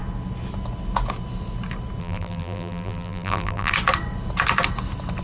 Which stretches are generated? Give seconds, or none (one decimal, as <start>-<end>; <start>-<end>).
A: 2.0-3.7